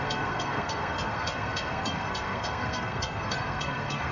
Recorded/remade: remade